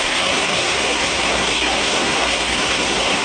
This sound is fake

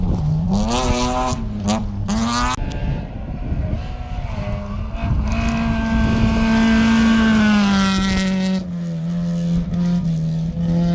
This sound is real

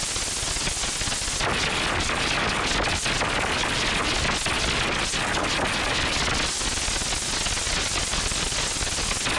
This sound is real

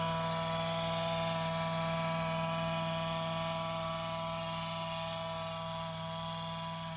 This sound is real